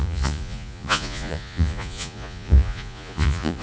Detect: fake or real fake